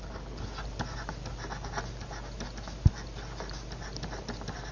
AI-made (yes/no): no